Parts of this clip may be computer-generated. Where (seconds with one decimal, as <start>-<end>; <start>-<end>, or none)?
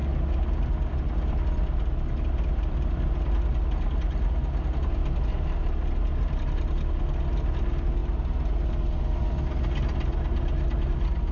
none